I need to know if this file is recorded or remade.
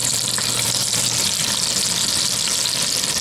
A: remade